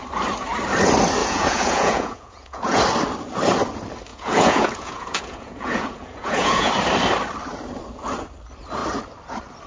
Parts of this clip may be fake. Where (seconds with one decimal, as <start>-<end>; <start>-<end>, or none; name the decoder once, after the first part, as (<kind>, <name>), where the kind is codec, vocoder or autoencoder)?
1.2-2.8 (vocoder, Vocos); 4.1-6.7